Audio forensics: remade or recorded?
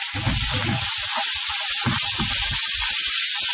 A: recorded